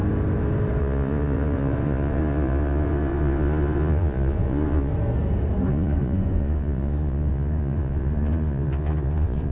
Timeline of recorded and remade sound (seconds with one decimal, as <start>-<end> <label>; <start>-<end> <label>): 0.0-0.8 recorded; 0.8-4.9 remade; 4.9-5.7 recorded; 5.7-9.5 remade